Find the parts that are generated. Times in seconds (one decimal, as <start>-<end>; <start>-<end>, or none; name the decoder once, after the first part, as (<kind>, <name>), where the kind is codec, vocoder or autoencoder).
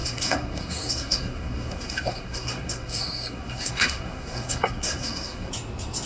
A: 0.0-5.5 (codec, SNAC)